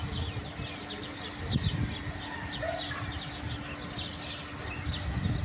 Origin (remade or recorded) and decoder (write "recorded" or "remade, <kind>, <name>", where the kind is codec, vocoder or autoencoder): recorded